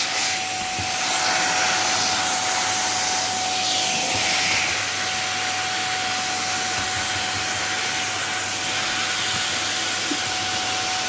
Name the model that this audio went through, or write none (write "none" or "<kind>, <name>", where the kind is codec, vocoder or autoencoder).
none